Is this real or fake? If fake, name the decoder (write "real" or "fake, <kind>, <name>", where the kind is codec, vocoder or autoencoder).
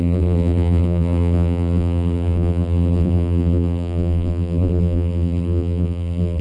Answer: fake, vocoder, BigVGAN v2